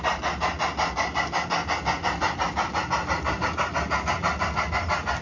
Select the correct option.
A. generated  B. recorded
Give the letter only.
B